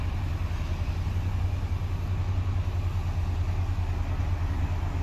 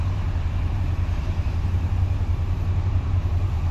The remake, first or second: second